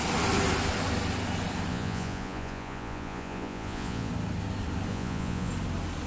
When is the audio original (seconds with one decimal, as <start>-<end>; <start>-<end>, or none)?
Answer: 0.0-1.7; 4.1-4.9; 5.5-6.1